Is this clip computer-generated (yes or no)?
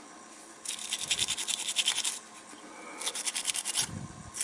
no